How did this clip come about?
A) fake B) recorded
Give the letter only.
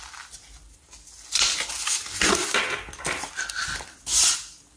B